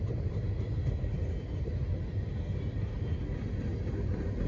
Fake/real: real